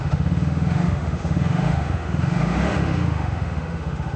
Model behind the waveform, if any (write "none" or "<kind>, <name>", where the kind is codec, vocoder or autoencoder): autoencoder, DAC-VAE